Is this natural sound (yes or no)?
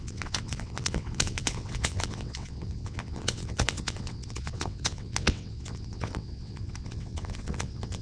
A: no